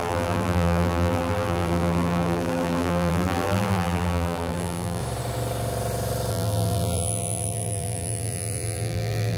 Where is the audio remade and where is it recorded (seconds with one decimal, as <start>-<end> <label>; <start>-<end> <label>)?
0.0-5.0 remade; 5.0-6.3 recorded; 6.3-9.4 remade